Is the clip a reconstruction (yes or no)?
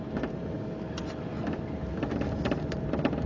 no